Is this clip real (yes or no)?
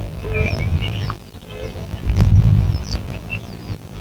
no